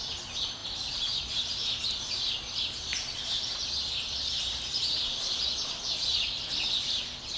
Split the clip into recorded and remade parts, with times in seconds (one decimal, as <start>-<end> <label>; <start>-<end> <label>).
0.0-7.4 recorded